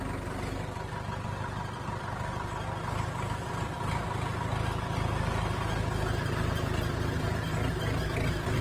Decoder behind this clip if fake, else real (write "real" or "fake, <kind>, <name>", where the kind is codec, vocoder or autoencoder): real